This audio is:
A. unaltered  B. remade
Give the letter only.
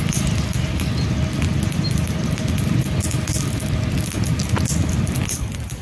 A